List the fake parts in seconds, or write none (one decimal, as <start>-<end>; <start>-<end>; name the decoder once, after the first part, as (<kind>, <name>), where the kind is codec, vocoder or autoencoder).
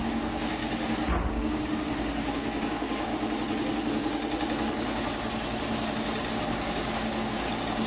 0.0-0.6 (codec, DAC); 1.3-3.1; 6.3-7.9